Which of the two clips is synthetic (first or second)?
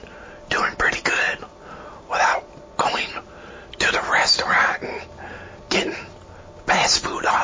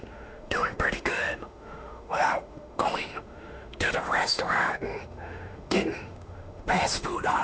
second